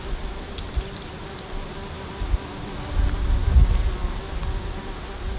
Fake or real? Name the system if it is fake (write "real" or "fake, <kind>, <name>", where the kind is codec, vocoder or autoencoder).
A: real